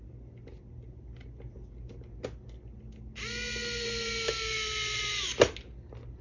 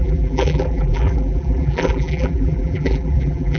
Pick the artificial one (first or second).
second